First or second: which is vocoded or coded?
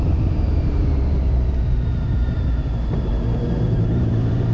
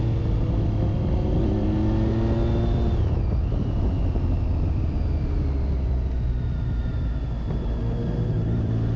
first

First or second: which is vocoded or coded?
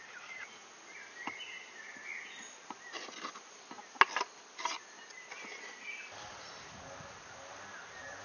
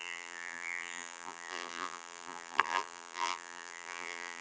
second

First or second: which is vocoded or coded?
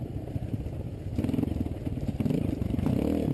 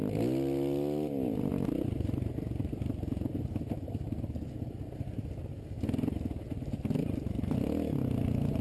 first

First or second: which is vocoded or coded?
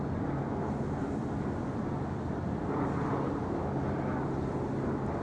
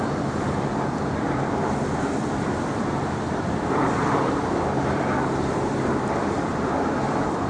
second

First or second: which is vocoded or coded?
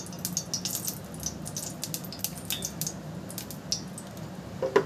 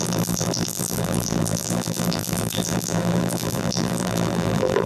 second